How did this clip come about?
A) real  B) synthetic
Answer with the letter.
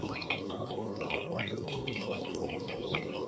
B